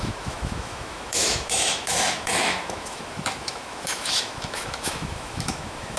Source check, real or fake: fake